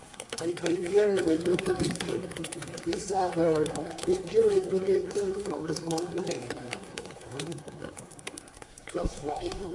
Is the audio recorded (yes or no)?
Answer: no